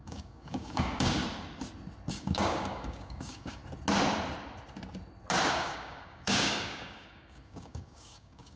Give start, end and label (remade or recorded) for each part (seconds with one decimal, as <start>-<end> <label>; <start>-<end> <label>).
0.0-1.2 remade; 1.2-2.1 recorded; 2.1-3.6 remade; 3.6-5.5 recorded; 5.5-8.6 remade